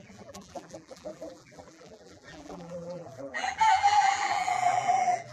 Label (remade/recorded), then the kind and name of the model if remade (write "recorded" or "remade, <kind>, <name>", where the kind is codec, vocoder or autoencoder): remade, vocoder, BigVGAN v2